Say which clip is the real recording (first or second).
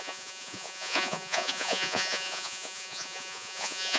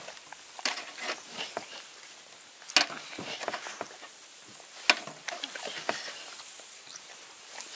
second